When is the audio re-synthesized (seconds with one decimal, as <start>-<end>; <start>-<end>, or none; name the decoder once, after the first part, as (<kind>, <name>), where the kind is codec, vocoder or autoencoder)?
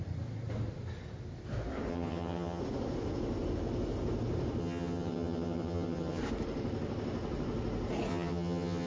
1.9-2.6 (vocoder, HiFi-GAN); 4.6-6.2; 8.1-8.9